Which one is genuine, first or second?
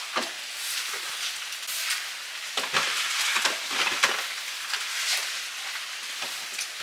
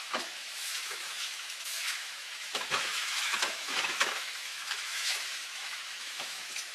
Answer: first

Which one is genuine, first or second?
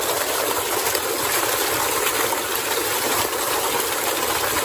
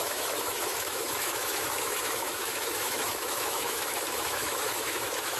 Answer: first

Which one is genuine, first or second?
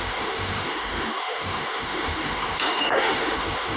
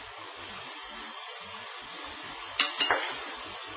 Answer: second